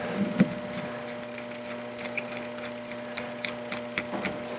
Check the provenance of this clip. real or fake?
real